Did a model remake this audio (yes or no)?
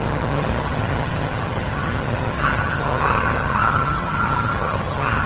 yes